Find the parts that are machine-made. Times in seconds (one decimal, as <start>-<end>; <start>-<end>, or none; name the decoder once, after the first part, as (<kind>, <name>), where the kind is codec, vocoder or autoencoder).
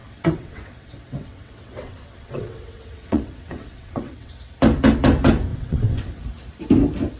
0.0-4.3 (vocoder, WaveNeXt); 5.5-6.2